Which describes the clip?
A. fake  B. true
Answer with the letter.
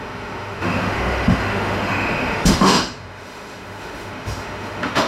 A